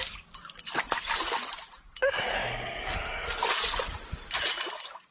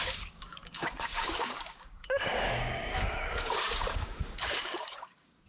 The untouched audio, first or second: first